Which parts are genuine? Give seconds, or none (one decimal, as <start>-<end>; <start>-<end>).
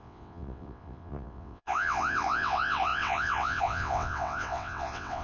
none